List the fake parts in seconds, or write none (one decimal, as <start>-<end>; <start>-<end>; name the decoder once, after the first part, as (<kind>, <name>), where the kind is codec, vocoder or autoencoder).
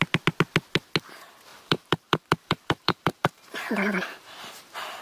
1.5-4.5 (vocoder, BigVGAN v2)